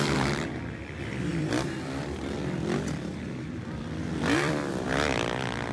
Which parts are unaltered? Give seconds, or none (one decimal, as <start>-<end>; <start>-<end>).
0.0-1.3; 4.7-5.7